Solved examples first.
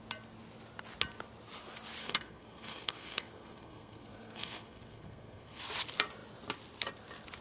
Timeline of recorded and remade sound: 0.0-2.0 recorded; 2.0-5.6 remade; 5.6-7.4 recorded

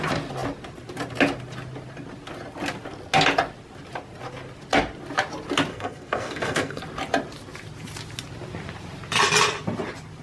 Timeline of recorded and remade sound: 0.0-5.7 recorded; 5.7-6.8 remade; 6.8-10.2 recorded

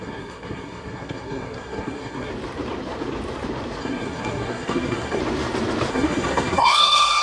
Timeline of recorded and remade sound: 0.0-2.3 remade; 2.3-3.8 recorded; 3.8-5.2 remade; 5.2-5.9 recorded; 5.9-7.2 remade

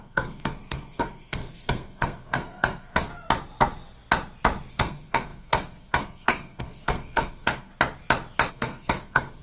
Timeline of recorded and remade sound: 0.0-3.1 remade; 3.1-4.7 recorded; 4.7-7.7 remade; 7.7-8.5 recorded; 8.5-9.4 remade

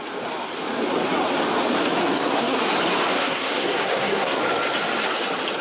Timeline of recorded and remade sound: 0.0-2.0 recorded; 2.0-2.6 remade; 2.6-3.2 recorded; 3.2-4.4 remade; 4.4-5.6 recorded

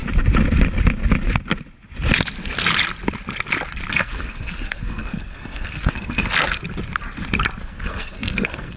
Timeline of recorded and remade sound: 0.0-3.9 recorded; 3.9-6.6 remade; 6.6-7.6 recorded; 7.6-8.8 remade

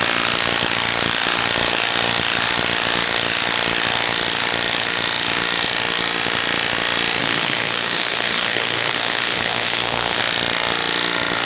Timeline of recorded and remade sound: 0.0-7.2 recorded; 7.2-10.2 remade; 10.2-11.5 recorded

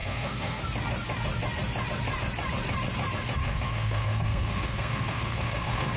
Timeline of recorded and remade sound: 0.0-0.6 remade; 0.6-3.4 recorded; 3.4-6.0 remade